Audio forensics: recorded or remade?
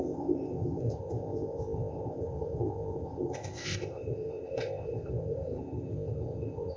remade